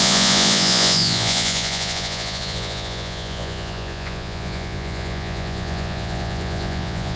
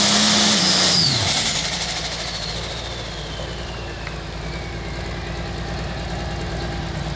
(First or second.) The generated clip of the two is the first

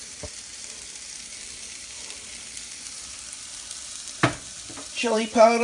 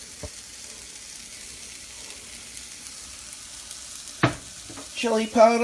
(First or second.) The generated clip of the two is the first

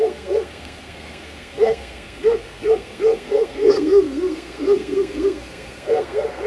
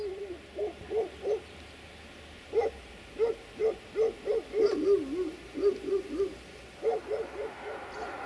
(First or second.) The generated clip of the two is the first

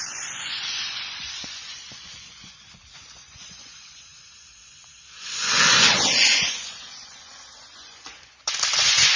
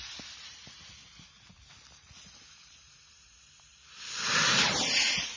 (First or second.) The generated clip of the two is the first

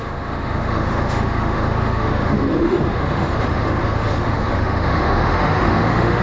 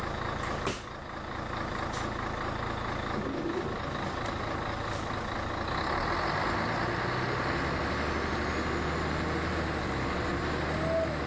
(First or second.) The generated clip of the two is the first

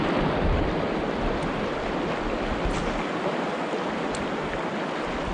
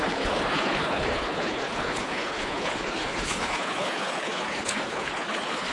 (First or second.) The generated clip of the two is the second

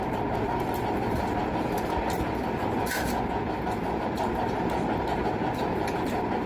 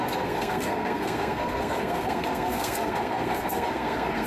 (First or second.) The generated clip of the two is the second